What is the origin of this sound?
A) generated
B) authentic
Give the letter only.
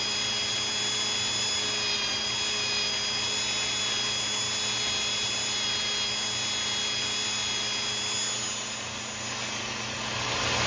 B